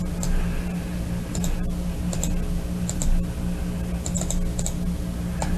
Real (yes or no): yes